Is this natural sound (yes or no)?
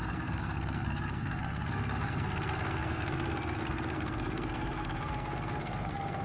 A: no